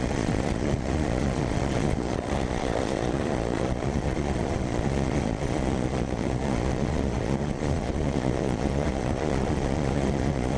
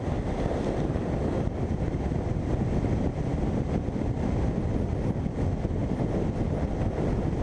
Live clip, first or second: second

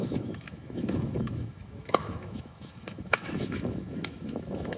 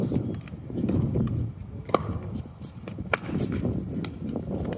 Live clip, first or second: second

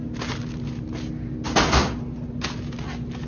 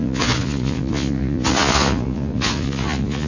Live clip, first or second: first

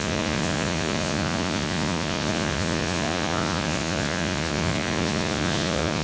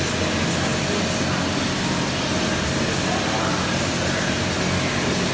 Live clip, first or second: second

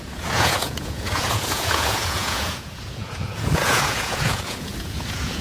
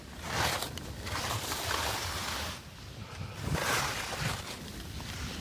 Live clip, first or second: second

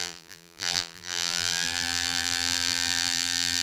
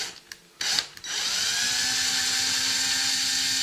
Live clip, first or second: second